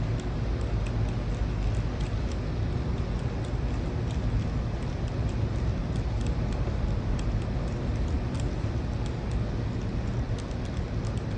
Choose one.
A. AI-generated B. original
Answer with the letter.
B